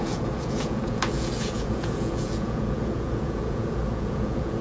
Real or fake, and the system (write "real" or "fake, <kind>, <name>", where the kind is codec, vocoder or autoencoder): fake, vocoder, Vocos